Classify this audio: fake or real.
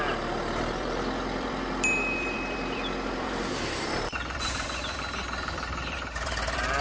fake